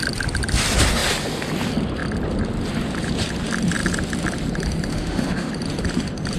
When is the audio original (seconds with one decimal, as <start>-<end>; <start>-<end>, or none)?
0.0-4.9; 5.5-6.4